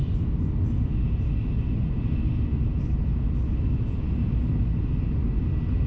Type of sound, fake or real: real